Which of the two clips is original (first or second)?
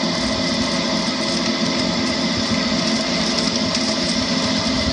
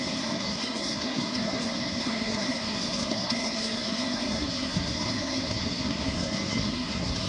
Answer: first